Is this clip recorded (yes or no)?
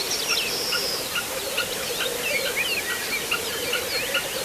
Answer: yes